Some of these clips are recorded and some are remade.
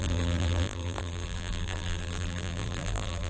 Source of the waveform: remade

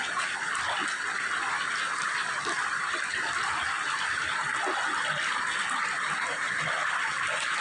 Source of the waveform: recorded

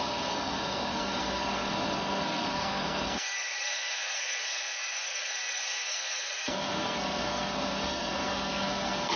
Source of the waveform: remade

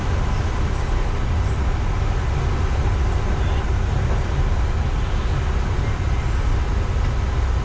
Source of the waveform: recorded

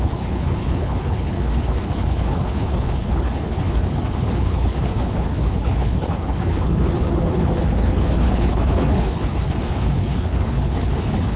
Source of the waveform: remade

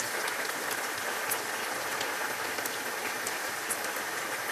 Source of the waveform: recorded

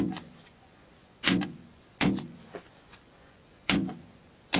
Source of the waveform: remade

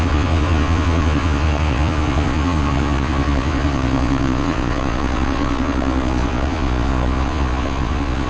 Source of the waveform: remade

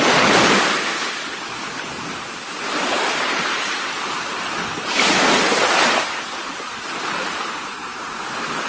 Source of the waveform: recorded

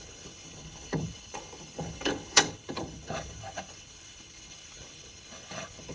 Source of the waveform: remade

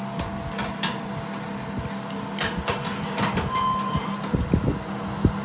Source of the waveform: recorded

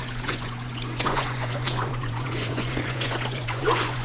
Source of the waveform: remade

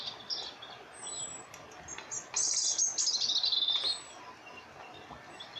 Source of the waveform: recorded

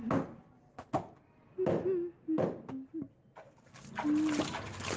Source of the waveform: recorded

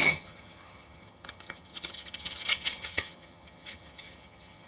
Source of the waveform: remade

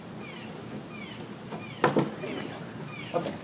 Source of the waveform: recorded